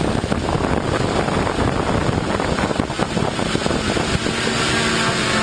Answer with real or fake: real